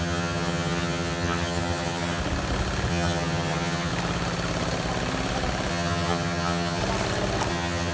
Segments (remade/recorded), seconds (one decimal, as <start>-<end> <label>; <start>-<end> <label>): 0.0-2.2 remade; 2.2-2.9 recorded; 2.9-3.9 remade; 3.9-5.7 recorded; 5.7-6.8 remade; 6.8-7.5 recorded; 7.5-7.9 remade